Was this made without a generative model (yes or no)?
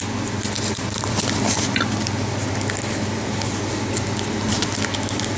yes